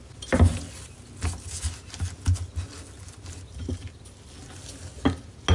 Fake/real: real